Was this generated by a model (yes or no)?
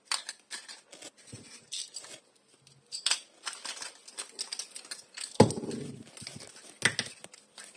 no